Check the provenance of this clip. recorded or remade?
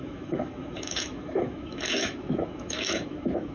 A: remade